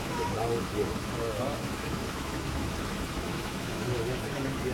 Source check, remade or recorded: remade